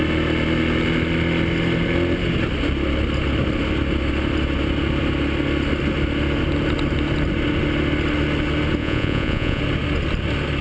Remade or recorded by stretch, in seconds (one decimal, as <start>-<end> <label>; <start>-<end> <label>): 0.0-8.8 recorded; 8.8-9.6 remade; 9.6-10.6 recorded